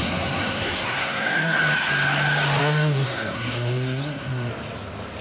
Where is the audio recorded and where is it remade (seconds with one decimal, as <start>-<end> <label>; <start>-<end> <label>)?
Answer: 0.0-1.6 remade; 1.6-2.6 recorded; 2.6-4.5 remade; 4.5-5.2 recorded